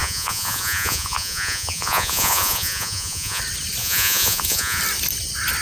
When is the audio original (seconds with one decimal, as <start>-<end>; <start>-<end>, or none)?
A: 3.4-3.8; 4.8-5.6